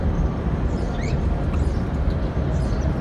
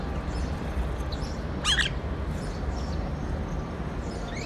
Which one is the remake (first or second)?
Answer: first